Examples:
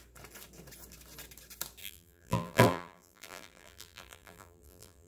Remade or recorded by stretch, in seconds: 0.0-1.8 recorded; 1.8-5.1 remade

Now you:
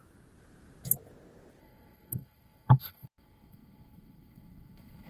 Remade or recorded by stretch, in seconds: 0.0-1.6 recorded; 1.6-5.1 remade

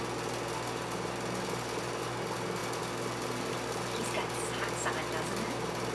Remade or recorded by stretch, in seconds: 0.0-5.9 recorded

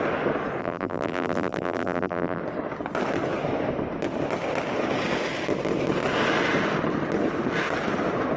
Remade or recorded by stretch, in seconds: 0.0-0.6 recorded; 0.6-2.4 remade; 2.4-8.4 recorded

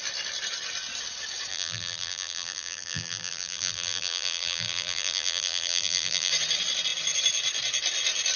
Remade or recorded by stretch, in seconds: 0.0-1.5 recorded; 1.5-6.3 remade; 6.3-8.4 recorded

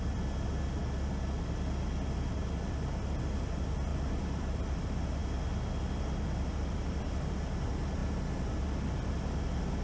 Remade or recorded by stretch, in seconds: 0.0-3.9 recorded; 3.9-4.8 remade; 4.8-9.8 recorded

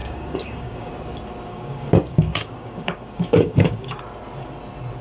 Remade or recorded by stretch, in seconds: 0.0-0.9 remade; 0.9-1.5 recorded; 1.5-4.0 remade; 4.0-5.0 recorded